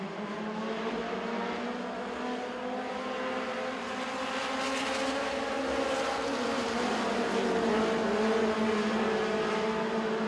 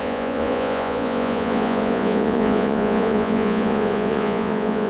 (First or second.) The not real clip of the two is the second